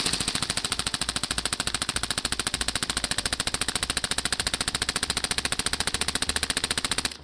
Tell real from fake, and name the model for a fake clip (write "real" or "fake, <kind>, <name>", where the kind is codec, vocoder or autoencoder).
real